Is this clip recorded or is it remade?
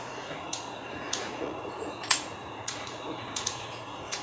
remade